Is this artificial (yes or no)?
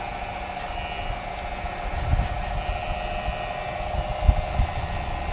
no